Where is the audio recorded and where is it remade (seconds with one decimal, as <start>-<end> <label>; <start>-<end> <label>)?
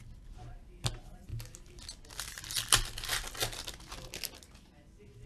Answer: 0.0-5.3 recorded